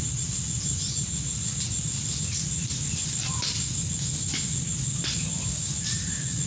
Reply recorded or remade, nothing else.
recorded